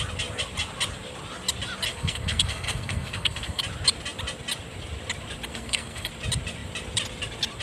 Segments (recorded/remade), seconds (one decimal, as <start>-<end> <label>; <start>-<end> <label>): 0.0-1.9 recorded; 1.9-3.6 remade; 3.6-5.5 recorded; 5.5-6.1 remade; 6.1-7.6 recorded